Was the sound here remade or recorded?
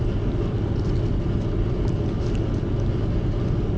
recorded